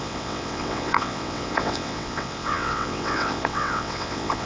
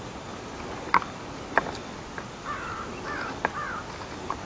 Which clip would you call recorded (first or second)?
second